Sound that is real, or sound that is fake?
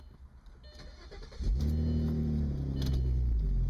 real